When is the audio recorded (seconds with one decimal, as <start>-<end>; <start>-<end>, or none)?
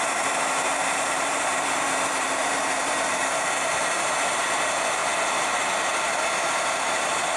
5.0-6.5